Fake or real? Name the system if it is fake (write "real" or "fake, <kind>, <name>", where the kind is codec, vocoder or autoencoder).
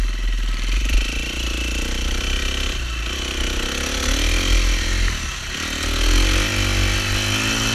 real